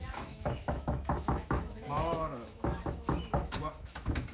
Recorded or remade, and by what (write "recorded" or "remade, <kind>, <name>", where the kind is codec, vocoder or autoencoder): remade, autoencoder, DAC-VAE